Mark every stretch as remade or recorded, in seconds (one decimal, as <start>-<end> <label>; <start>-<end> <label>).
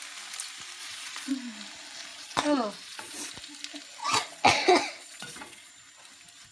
0.0-0.8 recorded; 0.8-1.3 remade; 1.3-2.1 recorded; 2.1-3.3 remade; 3.3-4.0 recorded; 4.0-5.7 remade; 5.7-6.5 recorded